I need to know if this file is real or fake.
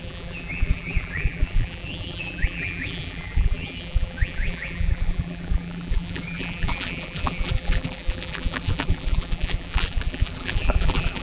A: fake